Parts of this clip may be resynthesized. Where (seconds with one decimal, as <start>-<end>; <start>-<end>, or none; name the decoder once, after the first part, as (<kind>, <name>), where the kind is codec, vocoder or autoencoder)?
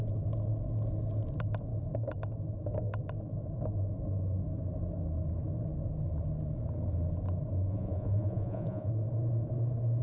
7.7-8.9 (vocoder, Vocos)